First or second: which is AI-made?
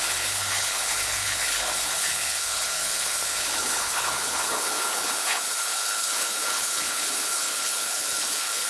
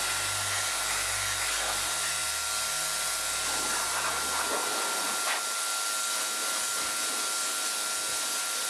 first